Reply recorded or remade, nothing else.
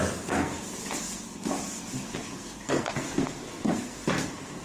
remade